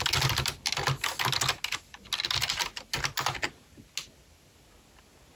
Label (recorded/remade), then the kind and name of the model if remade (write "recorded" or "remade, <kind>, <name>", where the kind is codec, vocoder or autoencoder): recorded